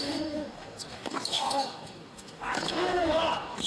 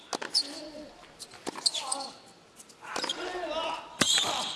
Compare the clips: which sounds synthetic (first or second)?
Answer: first